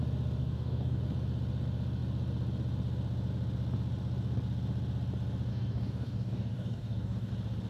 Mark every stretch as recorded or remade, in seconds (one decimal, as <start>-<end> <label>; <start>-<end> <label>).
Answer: 0.0-0.4 recorded; 0.4-1.0 remade; 1.0-5.5 recorded; 5.5-7.3 remade; 7.3-7.7 recorded